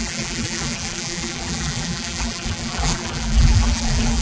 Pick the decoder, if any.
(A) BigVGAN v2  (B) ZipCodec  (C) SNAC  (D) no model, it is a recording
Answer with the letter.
A